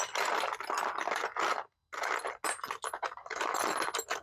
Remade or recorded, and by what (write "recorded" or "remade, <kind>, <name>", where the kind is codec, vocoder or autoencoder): recorded